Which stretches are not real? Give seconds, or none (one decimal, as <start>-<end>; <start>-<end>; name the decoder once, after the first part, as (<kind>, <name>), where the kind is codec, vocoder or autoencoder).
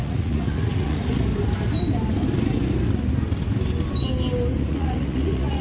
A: 0.0-1.3 (vocoder, Vocos); 4.7-5.6